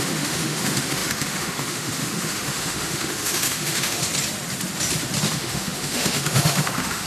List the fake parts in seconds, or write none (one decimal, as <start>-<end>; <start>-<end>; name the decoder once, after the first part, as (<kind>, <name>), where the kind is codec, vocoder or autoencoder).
0.0-4.1 (autoencoder, DAC-VAE); 5.3-7.1

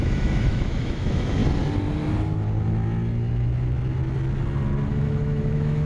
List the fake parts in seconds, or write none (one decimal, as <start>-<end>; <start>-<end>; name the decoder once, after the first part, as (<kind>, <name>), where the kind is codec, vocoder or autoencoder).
0.0-1.4 (autoencoder, DAC-VAE); 4.9-5.9

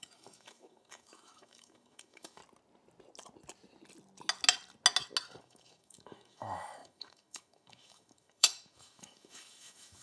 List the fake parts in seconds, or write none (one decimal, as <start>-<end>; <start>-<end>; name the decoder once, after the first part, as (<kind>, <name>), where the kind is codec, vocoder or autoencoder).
0.0-2.4 (autoencoder, DAC-VAE); 5.4-10.0

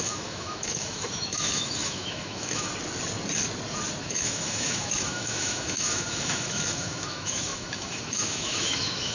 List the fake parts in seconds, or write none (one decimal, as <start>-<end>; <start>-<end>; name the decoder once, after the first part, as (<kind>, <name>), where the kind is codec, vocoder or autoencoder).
0.0-2.7 (autoencoder, DAC-VAE); 4.0-9.1

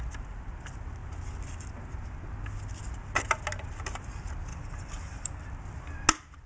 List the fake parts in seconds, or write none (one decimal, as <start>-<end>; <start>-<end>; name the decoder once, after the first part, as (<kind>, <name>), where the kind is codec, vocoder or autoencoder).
4.5-5.5 (vocoder, BigVGAN v2)

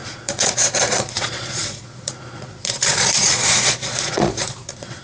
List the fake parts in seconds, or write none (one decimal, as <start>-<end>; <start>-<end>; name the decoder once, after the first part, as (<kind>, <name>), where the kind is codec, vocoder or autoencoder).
0.0-5.0 (vocoder, Vocos)

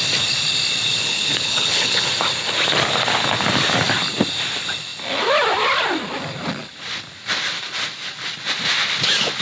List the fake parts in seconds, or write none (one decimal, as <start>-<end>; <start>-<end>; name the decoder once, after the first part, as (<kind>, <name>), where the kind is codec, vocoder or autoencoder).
1.0-2.1 (codec, HILCodec)

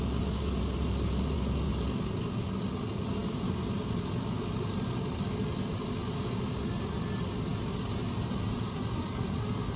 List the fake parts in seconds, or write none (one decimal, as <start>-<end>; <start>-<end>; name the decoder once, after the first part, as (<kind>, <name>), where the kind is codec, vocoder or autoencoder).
none